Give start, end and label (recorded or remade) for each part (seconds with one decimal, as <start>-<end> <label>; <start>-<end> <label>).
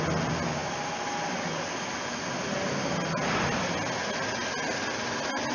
0.0-5.5 recorded